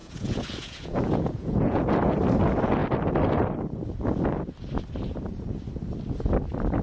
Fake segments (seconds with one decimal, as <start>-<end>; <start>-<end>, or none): 0.0-1.8